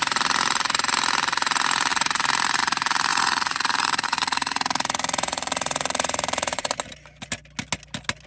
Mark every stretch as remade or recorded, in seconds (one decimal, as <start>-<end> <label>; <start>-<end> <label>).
0.0-3.1 recorded; 3.1-6.7 remade; 6.7-8.3 recorded